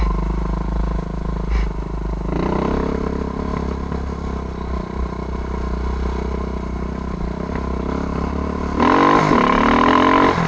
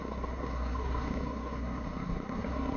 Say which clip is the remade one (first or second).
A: second